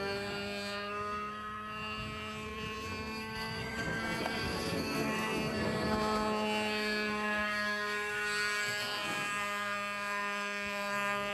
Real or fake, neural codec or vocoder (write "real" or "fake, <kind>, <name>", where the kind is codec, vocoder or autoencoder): fake, codec, SNAC